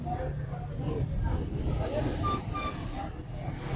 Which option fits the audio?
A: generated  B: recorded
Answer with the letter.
B